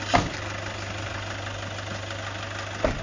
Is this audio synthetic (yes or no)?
no